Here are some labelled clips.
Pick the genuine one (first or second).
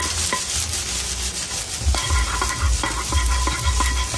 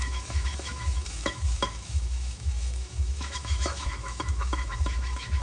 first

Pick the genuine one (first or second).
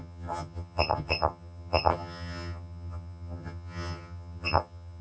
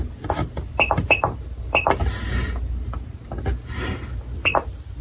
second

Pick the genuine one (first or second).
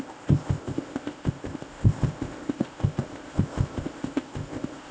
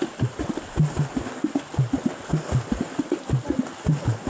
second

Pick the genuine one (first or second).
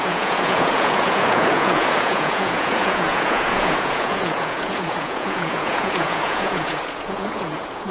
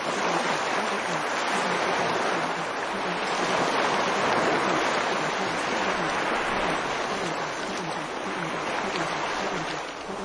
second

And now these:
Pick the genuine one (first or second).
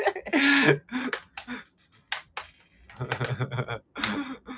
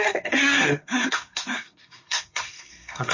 first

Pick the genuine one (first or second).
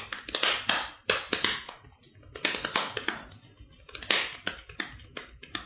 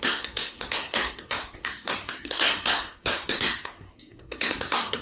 first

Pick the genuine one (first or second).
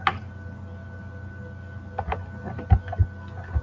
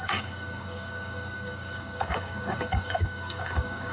first